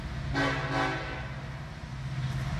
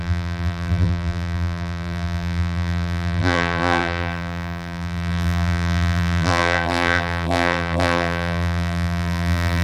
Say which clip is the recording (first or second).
first